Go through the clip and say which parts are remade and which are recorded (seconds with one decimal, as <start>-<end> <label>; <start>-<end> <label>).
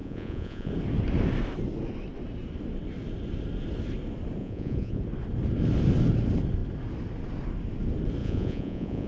0.0-0.7 remade; 0.7-4.4 recorded; 4.4-5.0 remade; 5.0-8.2 recorded; 8.2-9.1 remade